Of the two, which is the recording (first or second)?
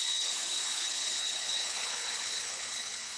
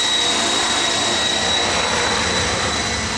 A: second